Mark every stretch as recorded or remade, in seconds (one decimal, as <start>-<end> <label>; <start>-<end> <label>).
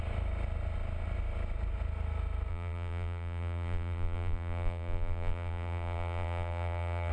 0.0-2.5 recorded; 2.5-7.1 remade